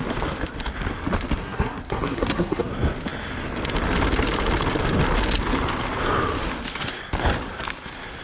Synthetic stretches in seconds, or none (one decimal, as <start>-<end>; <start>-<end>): 1.4-2.7